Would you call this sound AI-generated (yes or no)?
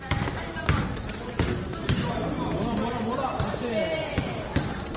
no